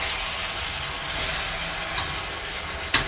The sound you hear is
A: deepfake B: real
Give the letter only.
B